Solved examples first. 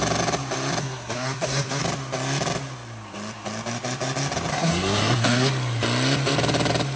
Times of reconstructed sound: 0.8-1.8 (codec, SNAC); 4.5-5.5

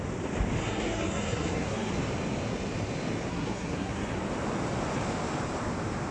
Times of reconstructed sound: 0.6-1.9 (codec, SNAC); 3.3-4.2